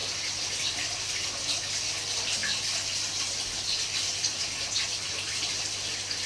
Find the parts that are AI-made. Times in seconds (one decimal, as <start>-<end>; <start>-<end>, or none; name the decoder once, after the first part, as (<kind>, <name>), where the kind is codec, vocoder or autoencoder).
0.0-6.3 (vocoder, BigVGAN v2)